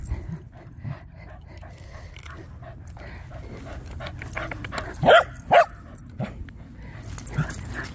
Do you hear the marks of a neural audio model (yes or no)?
no